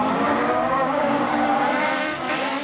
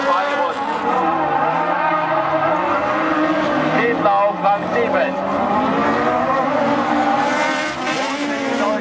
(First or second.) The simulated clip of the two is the first